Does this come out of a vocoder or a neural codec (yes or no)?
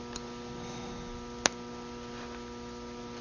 no